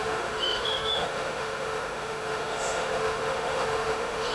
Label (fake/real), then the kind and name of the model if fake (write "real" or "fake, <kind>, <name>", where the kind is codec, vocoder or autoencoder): fake, autoencoder, DAC-VAE